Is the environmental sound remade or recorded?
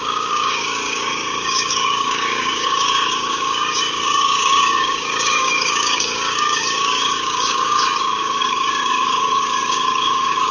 remade